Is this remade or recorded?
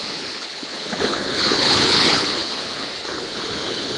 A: remade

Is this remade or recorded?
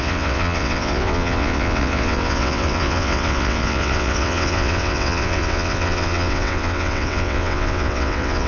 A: remade